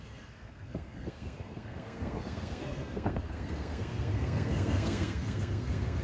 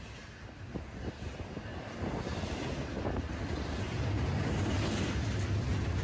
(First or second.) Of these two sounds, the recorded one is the second